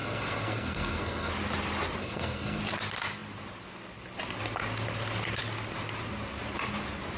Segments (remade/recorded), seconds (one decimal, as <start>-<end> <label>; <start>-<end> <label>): 0.0-1.3 remade; 1.3-2.0 recorded; 2.0-2.6 remade; 2.6-7.2 recorded